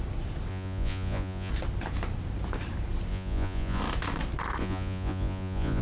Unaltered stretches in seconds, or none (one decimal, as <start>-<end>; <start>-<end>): 0.0-0.5; 1.5-3.1; 3.8-4.6